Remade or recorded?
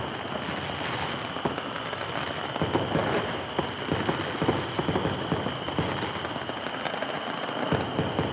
recorded